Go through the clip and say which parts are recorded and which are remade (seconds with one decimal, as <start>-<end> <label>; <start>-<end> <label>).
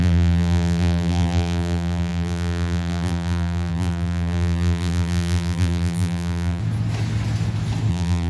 0.0-6.6 remade; 6.6-7.9 recorded; 7.9-8.3 remade